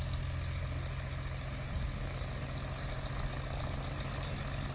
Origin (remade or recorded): recorded